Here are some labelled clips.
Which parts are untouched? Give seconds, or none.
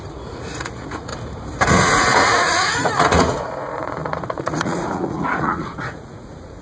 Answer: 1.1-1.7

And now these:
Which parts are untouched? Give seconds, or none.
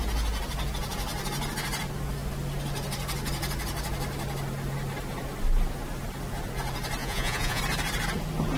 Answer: 0.0-7.0; 7.6-8.6